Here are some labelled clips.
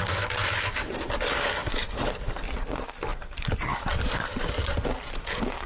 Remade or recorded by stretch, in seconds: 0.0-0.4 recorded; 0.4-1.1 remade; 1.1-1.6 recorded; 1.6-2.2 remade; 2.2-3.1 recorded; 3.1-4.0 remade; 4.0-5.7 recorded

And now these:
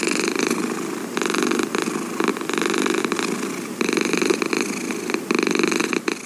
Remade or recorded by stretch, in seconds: 0.0-6.3 recorded

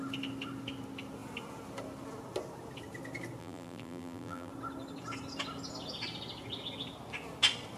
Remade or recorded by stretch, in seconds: 0.0-3.4 recorded; 3.4-4.5 remade; 4.5-7.8 recorded

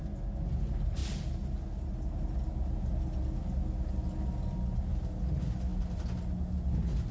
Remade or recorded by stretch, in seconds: 0.0-7.1 recorded